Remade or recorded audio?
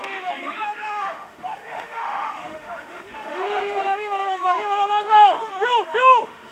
remade